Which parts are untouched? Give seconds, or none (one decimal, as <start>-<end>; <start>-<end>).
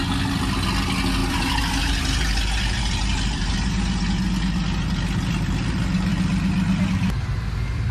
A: 0.0-1.2; 4.0-7.9